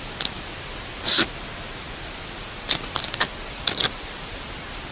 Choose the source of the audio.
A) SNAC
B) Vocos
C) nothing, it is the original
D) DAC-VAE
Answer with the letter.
C